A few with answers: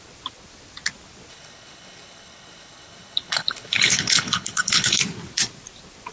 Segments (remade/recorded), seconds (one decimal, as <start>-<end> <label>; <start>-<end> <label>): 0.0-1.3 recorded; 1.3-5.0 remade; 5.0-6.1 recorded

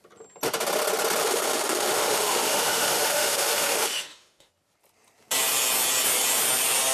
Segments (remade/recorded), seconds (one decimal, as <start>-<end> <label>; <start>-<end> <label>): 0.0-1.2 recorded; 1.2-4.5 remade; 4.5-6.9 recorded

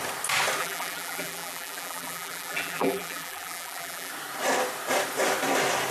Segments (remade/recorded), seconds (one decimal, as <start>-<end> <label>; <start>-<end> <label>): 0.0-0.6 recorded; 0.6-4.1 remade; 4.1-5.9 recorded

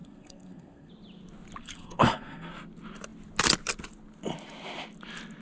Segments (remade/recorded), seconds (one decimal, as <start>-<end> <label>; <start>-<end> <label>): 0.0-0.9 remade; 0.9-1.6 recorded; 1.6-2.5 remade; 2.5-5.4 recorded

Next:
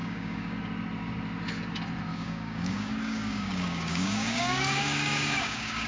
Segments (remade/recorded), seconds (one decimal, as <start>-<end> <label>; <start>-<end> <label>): 0.0-0.6 remade; 0.6-2.1 recorded; 2.1-5.9 remade

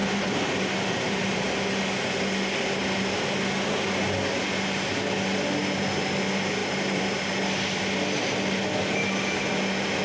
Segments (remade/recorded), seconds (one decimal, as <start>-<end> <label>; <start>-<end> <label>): 0.0-1.5 remade; 1.5-6.6 recorded; 6.6-7.2 remade; 7.2-10.0 recorded

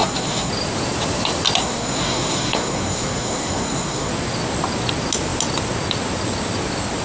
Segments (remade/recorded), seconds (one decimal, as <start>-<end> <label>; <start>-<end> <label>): 0.0-0.5 remade; 0.5-1.6 recorded; 1.6-4.1 remade; 4.1-7.0 recorded

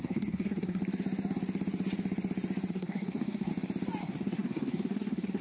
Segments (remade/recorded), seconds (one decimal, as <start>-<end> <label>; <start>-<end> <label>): 0.0-0.8 remade; 0.8-2.7 recorded; 2.7-3.5 remade; 3.5-4.0 recorded; 4.0-5.4 remade